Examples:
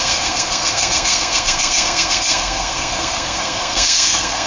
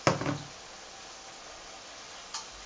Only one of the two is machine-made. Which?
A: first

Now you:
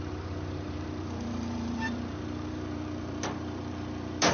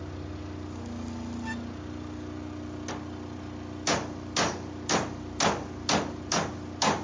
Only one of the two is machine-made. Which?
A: first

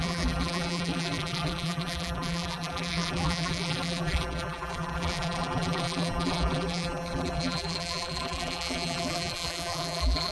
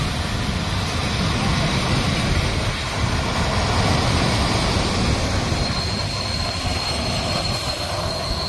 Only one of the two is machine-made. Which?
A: first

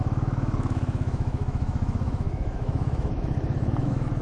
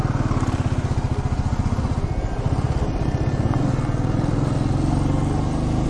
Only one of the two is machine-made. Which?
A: first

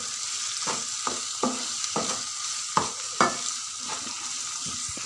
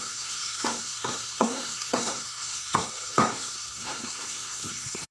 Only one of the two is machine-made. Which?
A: second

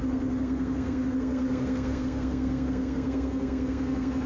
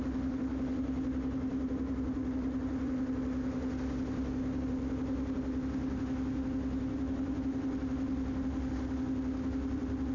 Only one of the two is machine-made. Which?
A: first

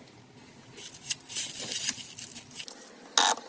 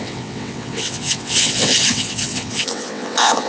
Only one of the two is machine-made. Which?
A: second